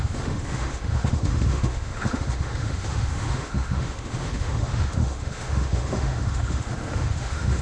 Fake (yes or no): yes